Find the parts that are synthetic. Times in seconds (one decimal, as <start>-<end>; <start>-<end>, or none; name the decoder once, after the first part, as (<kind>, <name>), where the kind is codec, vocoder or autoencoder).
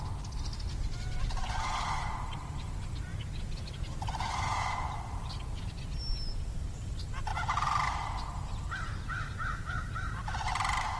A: 3.1-4.3 (vocoder, BigVGAN v2); 7.3-7.9